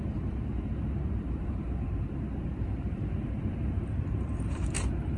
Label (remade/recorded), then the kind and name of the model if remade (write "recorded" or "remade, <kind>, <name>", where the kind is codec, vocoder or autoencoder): remade, vocoder, BigVGAN v2